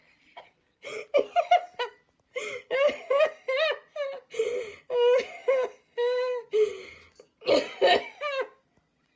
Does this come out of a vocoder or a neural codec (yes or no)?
no